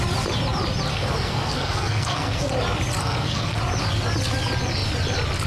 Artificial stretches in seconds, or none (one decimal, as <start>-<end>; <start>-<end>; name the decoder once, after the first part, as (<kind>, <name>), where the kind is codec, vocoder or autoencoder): 0.9-2.5 (codec, SNAC); 3.0-3.6